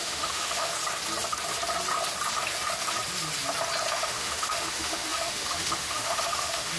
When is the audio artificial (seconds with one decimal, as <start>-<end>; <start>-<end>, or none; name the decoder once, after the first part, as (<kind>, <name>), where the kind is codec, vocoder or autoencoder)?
0.0-0.7 (autoencoder, DAC-VAE); 3.9-6.8